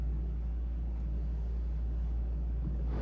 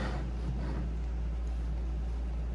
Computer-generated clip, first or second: first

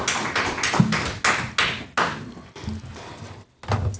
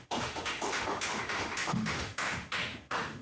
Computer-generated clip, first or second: second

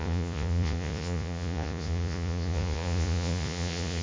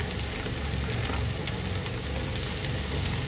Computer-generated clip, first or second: first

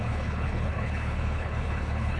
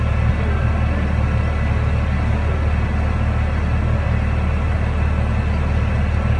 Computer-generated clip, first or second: first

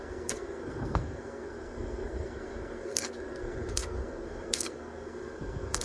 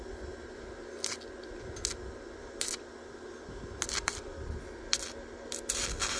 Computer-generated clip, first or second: first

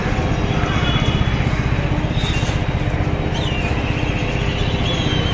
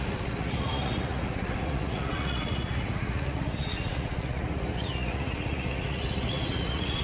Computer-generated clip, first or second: second